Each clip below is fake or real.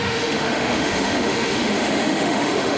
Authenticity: fake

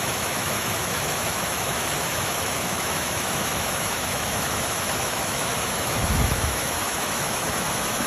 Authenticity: fake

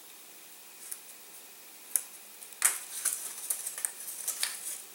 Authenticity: real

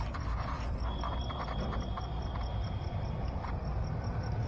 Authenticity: real